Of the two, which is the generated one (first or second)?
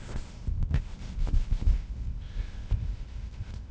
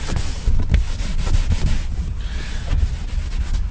first